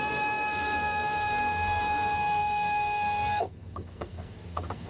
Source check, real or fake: fake